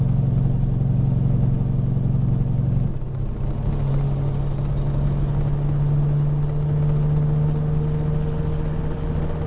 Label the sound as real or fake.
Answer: real